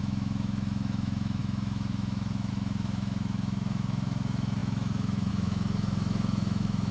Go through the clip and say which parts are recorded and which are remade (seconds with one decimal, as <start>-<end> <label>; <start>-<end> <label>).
0.0-6.9 remade